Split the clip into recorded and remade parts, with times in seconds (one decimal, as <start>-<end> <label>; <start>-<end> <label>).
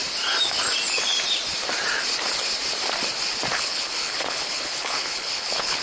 0.0-3.5 recorded; 3.5-5.8 remade